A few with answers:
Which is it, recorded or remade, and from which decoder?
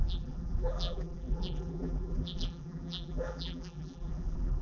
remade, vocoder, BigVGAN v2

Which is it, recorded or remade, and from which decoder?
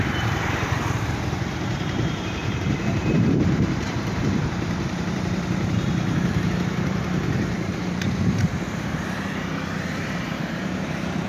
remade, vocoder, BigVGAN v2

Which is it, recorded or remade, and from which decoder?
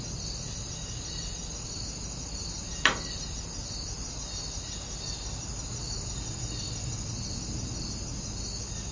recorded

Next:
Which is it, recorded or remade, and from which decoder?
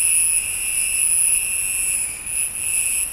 recorded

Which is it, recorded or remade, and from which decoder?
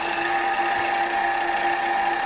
recorded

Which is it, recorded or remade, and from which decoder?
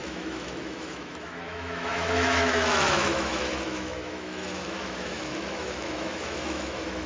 remade, autoencoder, DAC-VAE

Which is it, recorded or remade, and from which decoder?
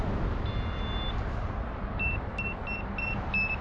recorded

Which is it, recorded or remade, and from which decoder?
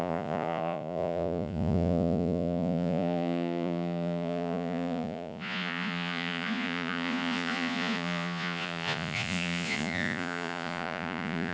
remade, vocoder, Vocos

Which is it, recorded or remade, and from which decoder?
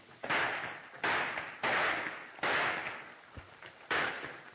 recorded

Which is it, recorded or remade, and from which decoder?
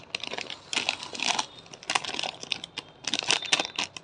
recorded